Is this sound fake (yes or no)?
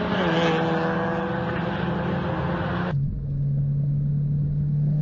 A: no